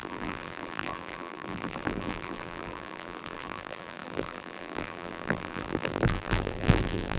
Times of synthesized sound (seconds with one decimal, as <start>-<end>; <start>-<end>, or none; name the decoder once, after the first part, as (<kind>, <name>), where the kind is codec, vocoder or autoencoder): 0.0-7.2 (vocoder, BigVGAN v2)